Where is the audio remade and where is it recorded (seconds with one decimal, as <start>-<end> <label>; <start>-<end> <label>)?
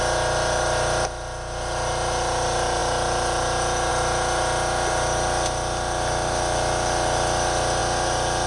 0.0-8.5 recorded